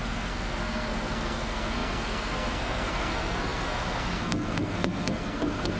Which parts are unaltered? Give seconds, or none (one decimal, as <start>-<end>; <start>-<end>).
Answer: none